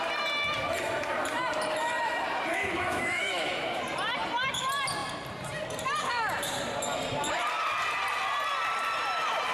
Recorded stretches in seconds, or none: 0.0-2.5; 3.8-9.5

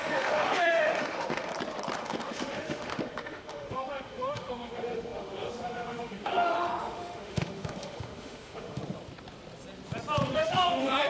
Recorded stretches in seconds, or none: 1.5-2.0; 8.8-10.3